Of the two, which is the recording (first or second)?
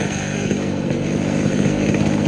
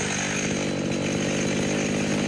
second